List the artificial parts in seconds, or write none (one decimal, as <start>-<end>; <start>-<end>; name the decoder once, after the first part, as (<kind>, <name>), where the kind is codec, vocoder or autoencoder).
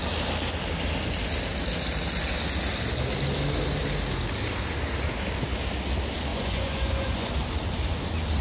6.3-7.3 (vocoder, Vocos)